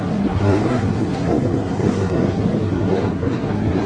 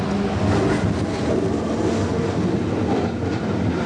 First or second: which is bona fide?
second